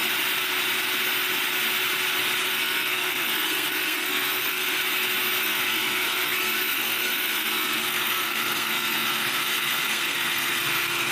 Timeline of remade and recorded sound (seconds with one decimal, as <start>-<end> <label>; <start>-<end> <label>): 0.0-2.5 recorded; 2.5-4.8 remade; 4.8-5.4 recorded; 5.4-11.1 remade